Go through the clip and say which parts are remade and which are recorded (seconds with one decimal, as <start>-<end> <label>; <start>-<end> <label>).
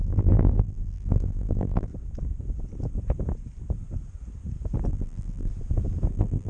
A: 0.0-1.9 remade; 1.9-4.9 recorded; 4.9-5.5 remade; 5.5-6.1 recorded; 6.1-6.5 remade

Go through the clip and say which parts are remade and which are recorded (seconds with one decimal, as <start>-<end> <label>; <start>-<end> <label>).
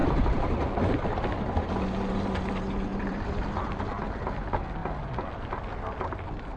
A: 0.0-2.9 recorded; 2.9-3.8 remade; 3.8-6.6 recorded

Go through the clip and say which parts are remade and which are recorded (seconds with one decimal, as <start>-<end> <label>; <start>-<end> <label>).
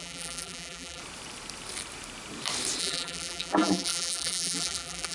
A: 0.0-1.0 remade; 1.0-2.8 recorded; 2.8-5.1 remade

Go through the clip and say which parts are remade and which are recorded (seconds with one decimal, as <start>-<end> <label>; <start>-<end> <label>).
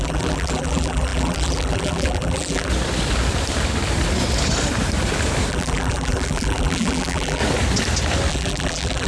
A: 0.0-2.7 remade; 2.7-5.5 recorded; 5.5-7.4 remade; 7.4-8.3 recorded; 8.3-9.1 remade